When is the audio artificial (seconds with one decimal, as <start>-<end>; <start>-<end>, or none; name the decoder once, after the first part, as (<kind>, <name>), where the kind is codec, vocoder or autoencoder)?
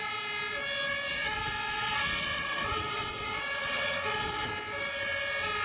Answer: 1.1-4.5 (vocoder, WaveNeXt)